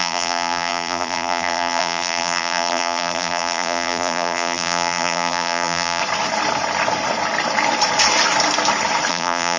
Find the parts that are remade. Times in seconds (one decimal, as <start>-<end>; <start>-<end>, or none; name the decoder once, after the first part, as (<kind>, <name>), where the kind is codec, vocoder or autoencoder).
0.0-6.0 (vocoder, BigVGAN v2); 9.1-9.6